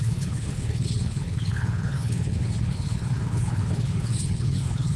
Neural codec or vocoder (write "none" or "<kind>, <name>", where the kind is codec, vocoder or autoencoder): codec, HILCodec